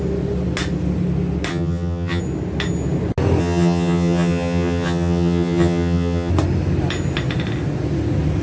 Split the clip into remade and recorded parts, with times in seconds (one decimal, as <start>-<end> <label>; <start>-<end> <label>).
0.0-1.5 recorded; 1.5-2.2 remade; 2.2-3.4 recorded; 3.4-6.3 remade; 6.3-8.4 recorded